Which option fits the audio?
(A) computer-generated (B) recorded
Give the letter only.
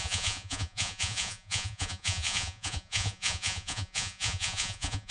A